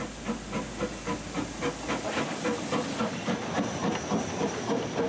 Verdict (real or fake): real